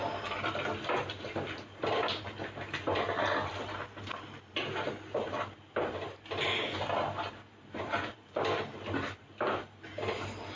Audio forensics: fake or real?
real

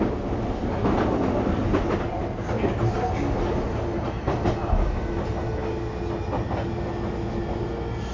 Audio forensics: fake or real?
real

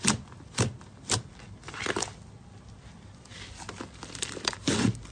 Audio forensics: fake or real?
real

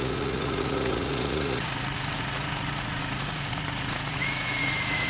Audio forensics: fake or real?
fake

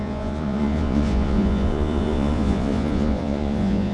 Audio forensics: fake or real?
fake